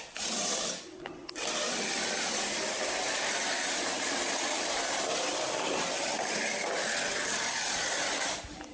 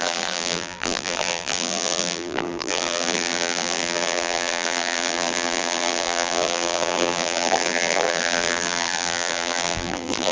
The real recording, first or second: first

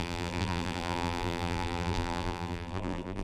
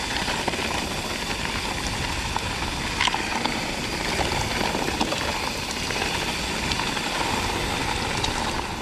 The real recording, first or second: second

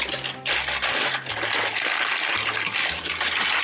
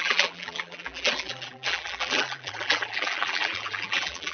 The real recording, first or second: first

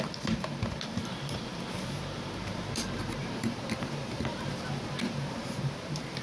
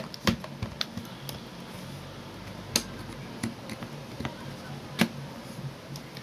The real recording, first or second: second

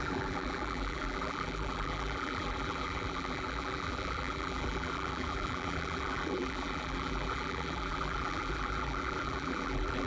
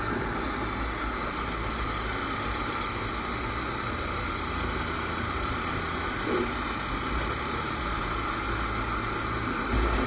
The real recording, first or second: second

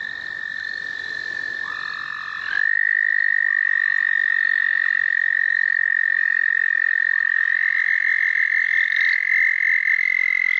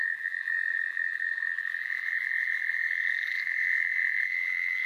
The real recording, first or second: first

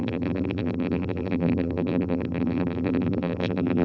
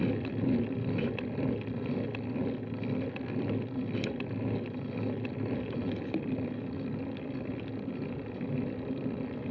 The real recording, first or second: second